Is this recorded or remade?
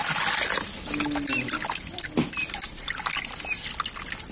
recorded